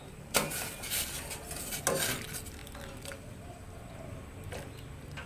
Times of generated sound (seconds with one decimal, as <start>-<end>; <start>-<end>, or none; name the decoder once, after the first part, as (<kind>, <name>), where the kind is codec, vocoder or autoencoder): none